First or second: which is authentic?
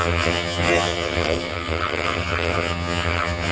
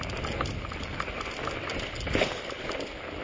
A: second